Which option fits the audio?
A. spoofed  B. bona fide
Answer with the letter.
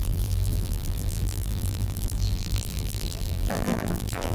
A